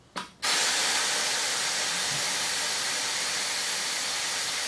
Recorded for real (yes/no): yes